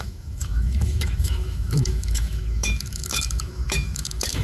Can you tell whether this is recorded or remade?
remade